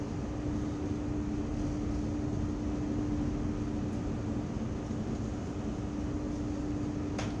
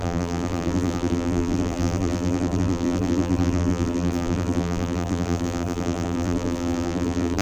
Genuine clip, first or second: first